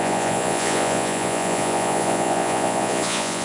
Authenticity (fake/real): fake